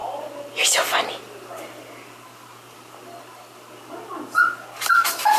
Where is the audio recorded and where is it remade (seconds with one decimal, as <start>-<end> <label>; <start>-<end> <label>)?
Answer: 0.0-5.4 recorded